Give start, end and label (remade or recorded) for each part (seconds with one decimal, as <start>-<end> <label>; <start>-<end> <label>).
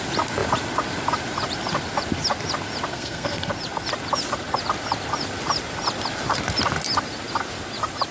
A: 0.0-2.9 recorded; 2.9-3.5 remade; 3.5-8.1 recorded